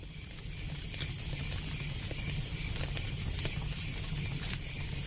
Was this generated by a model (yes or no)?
no